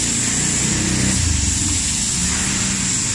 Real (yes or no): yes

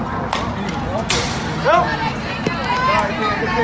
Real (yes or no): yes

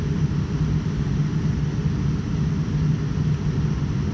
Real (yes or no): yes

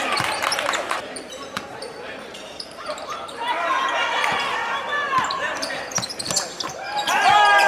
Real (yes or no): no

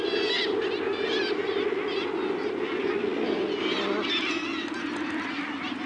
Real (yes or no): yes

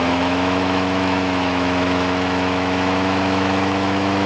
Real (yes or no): no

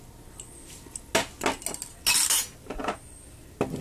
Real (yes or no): yes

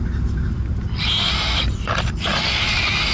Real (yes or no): yes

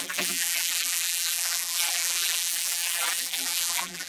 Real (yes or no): no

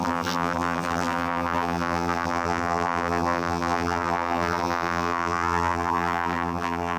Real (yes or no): no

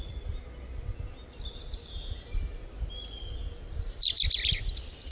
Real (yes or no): yes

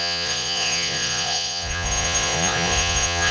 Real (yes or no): no